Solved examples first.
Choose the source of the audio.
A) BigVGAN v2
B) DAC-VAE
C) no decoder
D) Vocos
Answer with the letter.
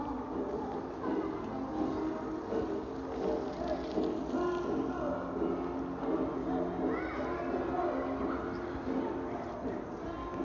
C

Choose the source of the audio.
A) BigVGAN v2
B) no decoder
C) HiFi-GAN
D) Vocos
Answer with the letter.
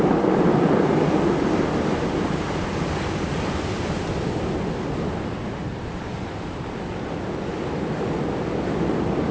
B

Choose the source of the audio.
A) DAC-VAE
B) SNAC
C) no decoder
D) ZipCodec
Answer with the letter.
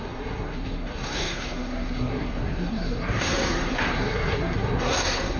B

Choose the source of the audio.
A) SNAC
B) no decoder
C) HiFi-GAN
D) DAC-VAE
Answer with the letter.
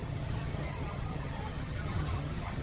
C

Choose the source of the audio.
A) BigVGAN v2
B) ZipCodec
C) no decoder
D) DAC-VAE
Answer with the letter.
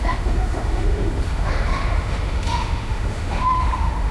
D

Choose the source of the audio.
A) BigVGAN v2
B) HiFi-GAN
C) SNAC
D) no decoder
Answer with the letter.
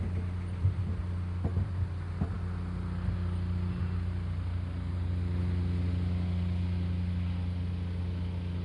D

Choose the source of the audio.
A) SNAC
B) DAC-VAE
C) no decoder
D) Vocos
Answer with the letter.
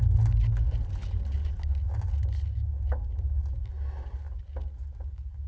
C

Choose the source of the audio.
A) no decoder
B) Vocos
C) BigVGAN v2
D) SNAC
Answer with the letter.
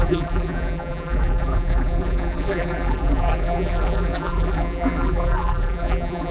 C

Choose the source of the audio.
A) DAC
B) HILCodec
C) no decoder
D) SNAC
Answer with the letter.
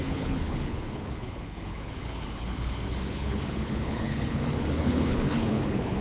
B